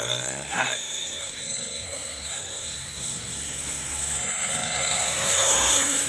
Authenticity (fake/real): fake